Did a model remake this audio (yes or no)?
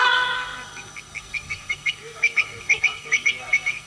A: yes